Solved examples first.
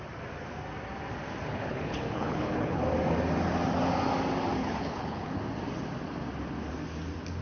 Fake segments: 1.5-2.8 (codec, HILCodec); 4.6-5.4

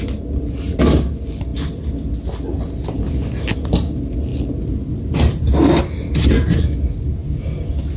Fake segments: none

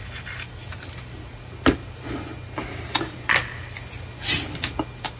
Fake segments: none

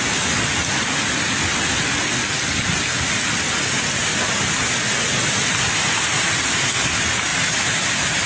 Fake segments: none

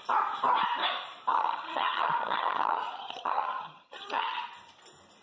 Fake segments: 1.3-4.4 (vocoder, HiFi-GAN)

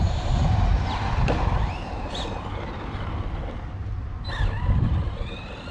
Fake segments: 0.0-2.3 (vocoder, BigVGAN v2); 3.8-4.3

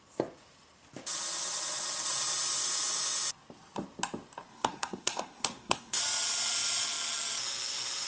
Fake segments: 4.5-6.0 (codec, SNAC)

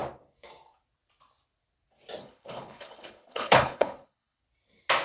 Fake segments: 2.2-4.4 (codec, HILCodec)